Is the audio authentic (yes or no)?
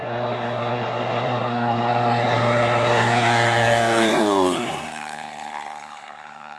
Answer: no